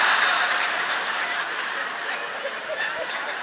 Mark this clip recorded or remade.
recorded